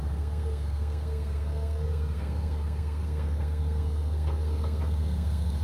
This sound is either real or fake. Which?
fake